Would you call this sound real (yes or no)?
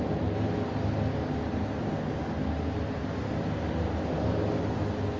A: yes